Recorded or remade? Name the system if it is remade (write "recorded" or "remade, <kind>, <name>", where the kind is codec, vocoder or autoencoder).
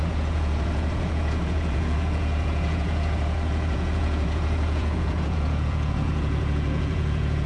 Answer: remade, vocoder, Vocos